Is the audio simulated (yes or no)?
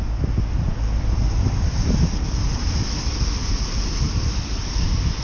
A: no